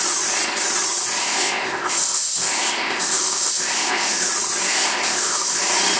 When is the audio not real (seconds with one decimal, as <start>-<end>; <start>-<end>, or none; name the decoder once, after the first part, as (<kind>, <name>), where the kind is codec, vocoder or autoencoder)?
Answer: 1.2-4.3 (codec, ZipCodec); 4.7-5.6